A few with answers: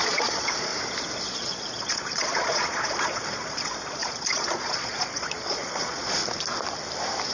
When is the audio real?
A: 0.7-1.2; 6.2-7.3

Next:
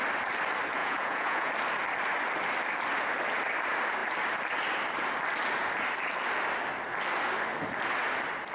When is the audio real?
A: 0.0-0.8; 1.5-8.5